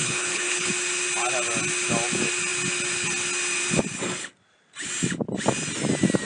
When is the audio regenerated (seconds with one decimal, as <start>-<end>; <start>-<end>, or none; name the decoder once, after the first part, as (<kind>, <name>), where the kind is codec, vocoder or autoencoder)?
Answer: 0.0-0.7 (codec, HILCodec)